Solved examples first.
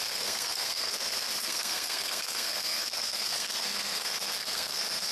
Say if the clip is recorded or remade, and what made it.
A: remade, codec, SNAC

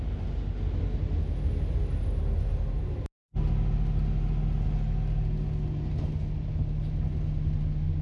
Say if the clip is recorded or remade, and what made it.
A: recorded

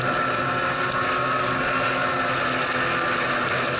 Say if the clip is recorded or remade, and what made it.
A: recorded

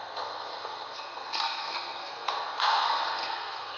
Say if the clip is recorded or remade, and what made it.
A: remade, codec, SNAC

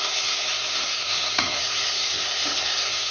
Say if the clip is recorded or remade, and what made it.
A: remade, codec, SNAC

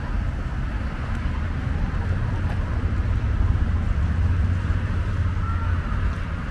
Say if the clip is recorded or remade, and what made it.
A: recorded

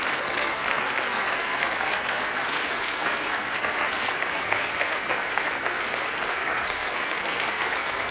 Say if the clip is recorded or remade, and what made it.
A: remade, codec, SNAC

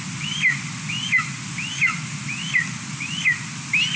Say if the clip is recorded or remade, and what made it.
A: recorded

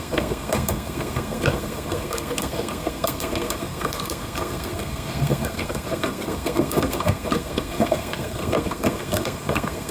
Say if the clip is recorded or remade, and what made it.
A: remade, codec, SNAC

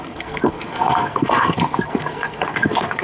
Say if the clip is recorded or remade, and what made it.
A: remade, codec, SNAC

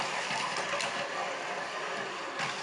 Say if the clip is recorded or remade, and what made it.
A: recorded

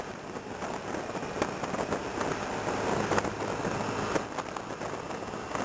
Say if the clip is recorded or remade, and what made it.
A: recorded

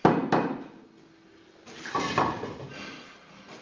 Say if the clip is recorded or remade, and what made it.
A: recorded